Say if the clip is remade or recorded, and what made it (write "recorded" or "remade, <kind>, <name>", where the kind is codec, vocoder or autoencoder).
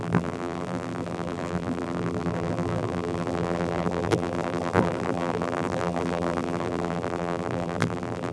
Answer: remade, vocoder, BigVGAN v2